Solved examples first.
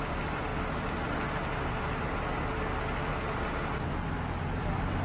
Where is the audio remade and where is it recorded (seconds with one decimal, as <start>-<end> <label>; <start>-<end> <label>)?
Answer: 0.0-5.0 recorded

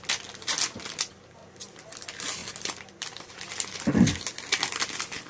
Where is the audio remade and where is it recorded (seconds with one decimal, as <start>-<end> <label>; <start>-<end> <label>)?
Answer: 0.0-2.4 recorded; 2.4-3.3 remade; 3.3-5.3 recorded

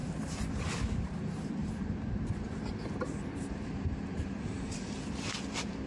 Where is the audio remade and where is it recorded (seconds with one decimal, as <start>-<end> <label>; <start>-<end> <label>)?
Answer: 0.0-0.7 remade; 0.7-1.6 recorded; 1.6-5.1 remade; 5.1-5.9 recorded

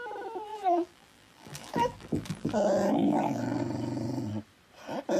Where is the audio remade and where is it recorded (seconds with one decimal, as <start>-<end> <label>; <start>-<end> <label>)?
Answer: 0.0-0.5 recorded; 0.5-3.6 remade; 3.6-5.2 recorded